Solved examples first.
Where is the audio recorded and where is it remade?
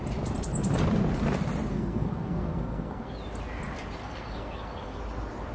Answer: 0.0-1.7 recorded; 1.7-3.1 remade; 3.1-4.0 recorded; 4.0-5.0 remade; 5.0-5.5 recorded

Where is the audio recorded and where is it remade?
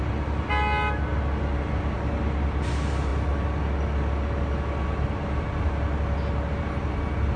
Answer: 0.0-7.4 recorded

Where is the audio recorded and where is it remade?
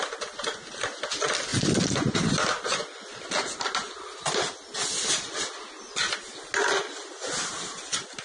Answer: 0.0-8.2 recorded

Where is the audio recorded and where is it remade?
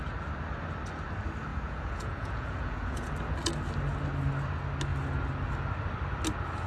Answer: 0.0-1.5 recorded; 1.5-3.1 remade; 3.1-6.7 recorded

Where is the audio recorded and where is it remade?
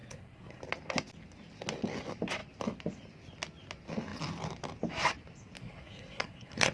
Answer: 0.0-0.6 remade; 0.6-5.6 recorded; 5.6-6.7 remade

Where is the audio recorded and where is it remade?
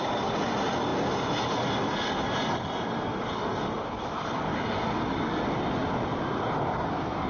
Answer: 0.0-7.3 recorded